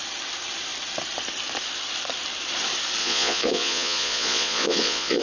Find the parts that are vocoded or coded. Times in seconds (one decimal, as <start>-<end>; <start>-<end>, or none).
3.0-5.2